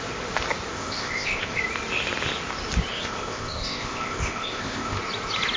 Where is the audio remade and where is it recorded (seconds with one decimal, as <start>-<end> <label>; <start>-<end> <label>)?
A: 0.0-0.7 recorded; 0.7-1.6 remade; 1.6-2.9 recorded; 2.9-5.0 remade; 5.0-5.6 recorded